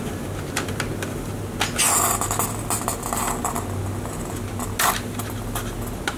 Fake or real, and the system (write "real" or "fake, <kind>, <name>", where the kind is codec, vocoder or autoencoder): real